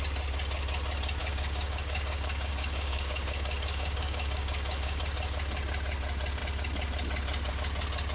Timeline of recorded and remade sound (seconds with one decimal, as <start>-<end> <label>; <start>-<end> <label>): 0.0-1.2 recorded; 1.2-5.0 remade; 5.0-8.1 recorded

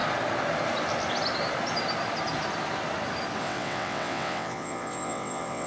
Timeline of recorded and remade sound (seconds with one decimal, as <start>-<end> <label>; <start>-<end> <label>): 0.0-3.4 recorded; 3.4-5.7 remade